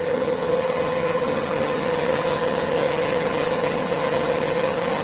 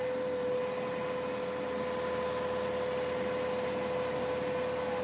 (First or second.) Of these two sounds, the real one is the second